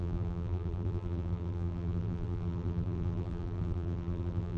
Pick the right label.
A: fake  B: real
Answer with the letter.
A